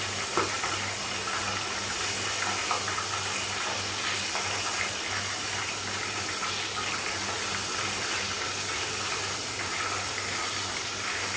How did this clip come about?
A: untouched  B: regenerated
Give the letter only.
A